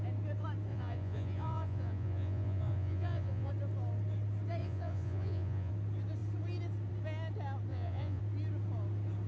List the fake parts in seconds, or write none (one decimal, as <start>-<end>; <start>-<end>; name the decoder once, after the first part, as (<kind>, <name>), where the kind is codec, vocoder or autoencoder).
0.7-3.5 (vocoder, Vocos); 4.6-5.7; 7.7-8.2